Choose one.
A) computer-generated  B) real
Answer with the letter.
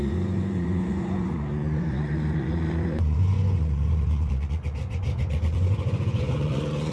A